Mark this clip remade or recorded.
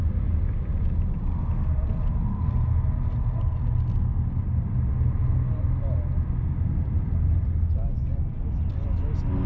recorded